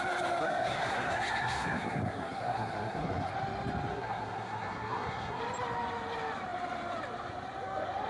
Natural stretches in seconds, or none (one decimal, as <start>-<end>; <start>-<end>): 0.0-0.4; 3.3-3.9; 5.4-8.1